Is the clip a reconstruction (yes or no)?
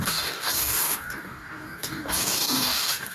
yes